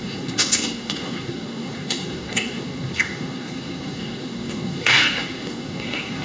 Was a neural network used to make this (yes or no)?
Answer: yes